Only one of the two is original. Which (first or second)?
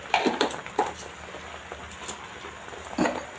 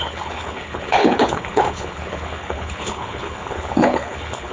first